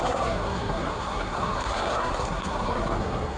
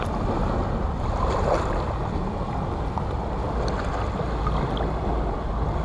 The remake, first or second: first